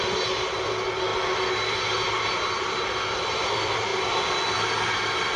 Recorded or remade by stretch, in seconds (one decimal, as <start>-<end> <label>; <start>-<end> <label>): 0.0-5.4 recorded